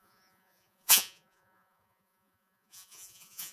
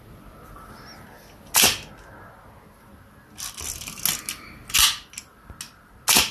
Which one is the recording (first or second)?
second